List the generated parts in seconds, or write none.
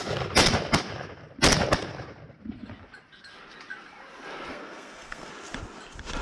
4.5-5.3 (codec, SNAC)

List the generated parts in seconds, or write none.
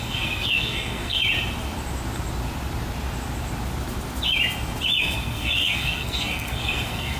0.0-1.2 (codec, SNAC); 5.0-7.2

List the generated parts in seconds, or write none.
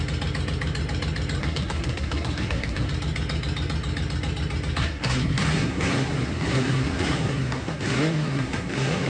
1.4-2.9 (codec, SNAC); 4.8-9.1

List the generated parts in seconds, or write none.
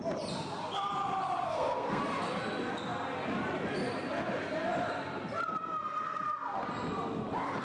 1.4-2.0 (codec, SNAC)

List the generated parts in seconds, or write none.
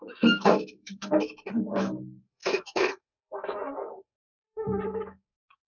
0.0-5.8 (codec, SNAC)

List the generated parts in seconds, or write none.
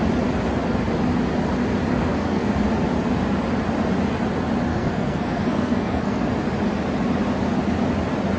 1.9-2.5 (codec, SNAC); 4.7-6.3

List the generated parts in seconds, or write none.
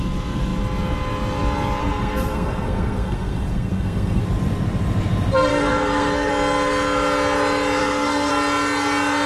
1.8-4.2 (codec, SNAC); 5.5-6.3; 7.8-8.3